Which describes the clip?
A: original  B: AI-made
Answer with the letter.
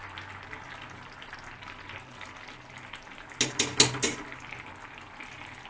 A